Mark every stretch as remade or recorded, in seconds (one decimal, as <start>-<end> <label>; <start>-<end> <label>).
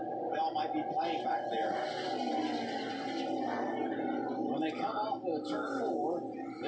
0.0-6.7 recorded